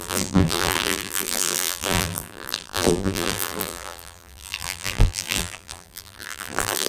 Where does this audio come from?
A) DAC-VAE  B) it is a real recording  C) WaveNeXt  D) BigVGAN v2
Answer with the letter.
D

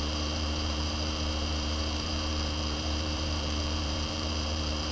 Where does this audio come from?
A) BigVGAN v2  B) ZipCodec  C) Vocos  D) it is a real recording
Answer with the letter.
A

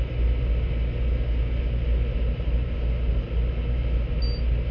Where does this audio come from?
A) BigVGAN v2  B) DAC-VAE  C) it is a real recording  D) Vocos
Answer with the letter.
C